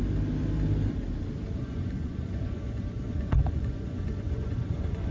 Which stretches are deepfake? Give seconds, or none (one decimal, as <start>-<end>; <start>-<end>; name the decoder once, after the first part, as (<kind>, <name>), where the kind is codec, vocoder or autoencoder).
1.6-5.1 (vocoder, Vocos)

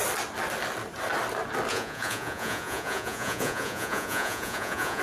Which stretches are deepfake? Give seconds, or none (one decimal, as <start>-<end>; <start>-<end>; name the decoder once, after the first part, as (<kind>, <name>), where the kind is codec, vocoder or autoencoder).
1.7-5.0 (vocoder, Vocos)

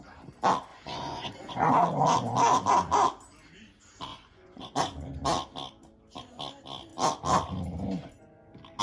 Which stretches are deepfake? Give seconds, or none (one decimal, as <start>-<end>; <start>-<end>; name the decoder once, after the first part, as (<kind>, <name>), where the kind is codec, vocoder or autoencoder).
0.7-1.7 (vocoder, Vocos); 4.1-5.1

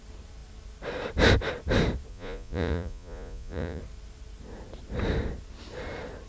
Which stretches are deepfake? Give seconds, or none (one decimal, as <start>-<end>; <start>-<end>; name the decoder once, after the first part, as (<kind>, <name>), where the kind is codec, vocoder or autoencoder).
2.1-3.8 (vocoder, Vocos)

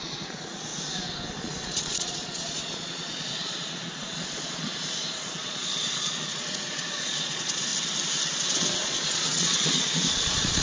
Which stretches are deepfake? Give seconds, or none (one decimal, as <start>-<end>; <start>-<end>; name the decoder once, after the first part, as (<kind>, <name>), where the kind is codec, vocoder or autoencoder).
0.0-0.7 (vocoder, Vocos); 1.4-7.7; 8.3-10.6

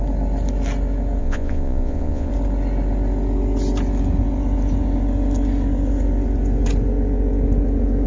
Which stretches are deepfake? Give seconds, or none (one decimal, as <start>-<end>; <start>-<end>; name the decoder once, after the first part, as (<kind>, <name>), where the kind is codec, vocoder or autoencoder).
1.2-2.3 (vocoder, Vocos)